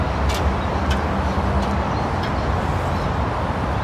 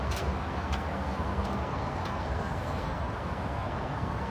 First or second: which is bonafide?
first